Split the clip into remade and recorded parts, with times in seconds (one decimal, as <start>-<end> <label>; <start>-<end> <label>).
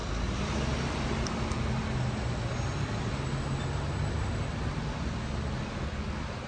0.0-6.5 recorded